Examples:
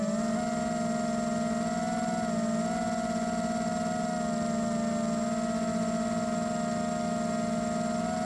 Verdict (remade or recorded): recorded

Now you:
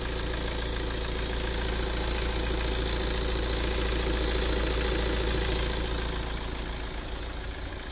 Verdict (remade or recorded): recorded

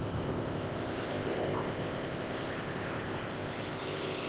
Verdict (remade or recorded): remade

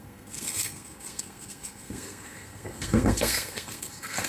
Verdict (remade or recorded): remade